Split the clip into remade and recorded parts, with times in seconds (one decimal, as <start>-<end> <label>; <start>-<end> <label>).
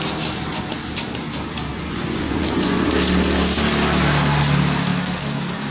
0.0-1.7 recorded; 1.7-2.9 remade; 2.9-5.7 recorded